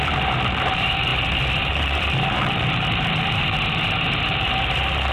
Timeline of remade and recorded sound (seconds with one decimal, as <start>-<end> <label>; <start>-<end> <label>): 0.0-5.1 remade

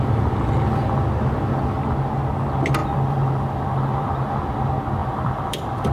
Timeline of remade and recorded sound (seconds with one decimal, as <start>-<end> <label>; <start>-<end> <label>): 0.0-2.8 recorded; 2.8-4.1 remade; 4.1-5.0 recorded; 5.0-5.9 remade

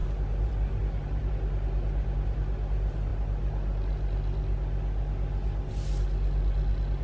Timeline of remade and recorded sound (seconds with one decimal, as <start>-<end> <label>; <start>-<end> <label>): 0.0-7.0 recorded

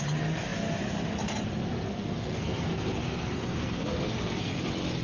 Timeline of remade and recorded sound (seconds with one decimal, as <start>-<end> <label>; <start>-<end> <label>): 0.0-1.9 recorded; 1.9-4.6 remade; 4.6-5.0 recorded

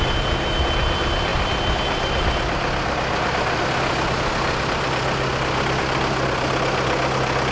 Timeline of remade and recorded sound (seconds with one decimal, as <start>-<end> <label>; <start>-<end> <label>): 0.0-7.5 recorded